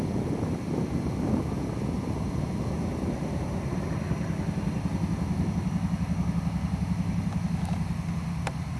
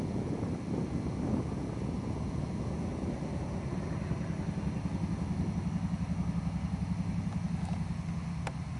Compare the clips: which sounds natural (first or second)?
second